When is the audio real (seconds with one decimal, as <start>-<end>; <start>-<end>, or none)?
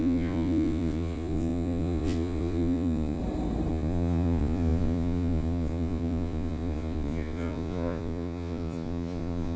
3.2-3.7